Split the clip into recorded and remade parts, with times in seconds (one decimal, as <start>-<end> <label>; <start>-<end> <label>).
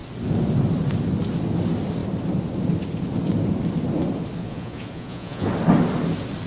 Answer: 0.0-4.4 recorded; 4.4-5.5 remade; 5.5-6.5 recorded